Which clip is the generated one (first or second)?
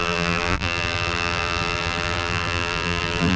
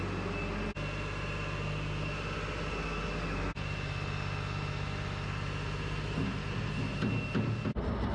first